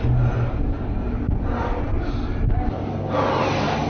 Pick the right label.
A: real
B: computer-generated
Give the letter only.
A